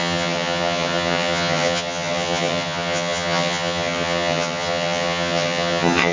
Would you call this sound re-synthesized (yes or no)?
yes